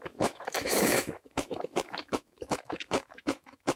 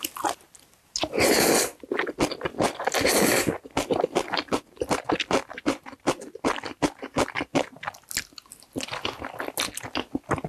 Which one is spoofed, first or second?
first